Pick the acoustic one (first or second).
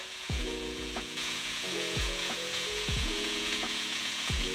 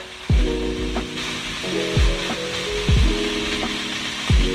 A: second